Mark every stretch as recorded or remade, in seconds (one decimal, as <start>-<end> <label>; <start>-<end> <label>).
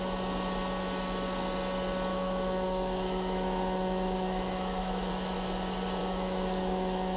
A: 0.0-2.1 recorded; 2.1-5.1 remade; 5.1-6.0 recorded; 6.0-7.2 remade